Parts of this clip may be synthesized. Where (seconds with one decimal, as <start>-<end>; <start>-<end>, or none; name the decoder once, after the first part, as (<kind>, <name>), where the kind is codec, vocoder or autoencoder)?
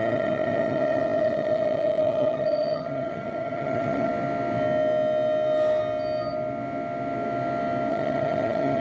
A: 0.0-4.1 (vocoder, HiFi-GAN); 7.9-8.8